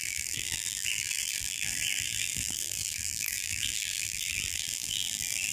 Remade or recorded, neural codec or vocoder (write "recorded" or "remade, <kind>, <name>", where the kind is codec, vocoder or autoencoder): remade, vocoder, BigVGAN v2